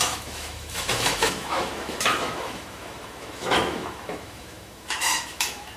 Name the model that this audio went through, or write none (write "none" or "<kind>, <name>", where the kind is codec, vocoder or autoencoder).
autoencoder, DAC-VAE